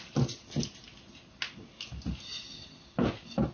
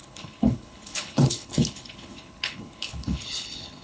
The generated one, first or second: second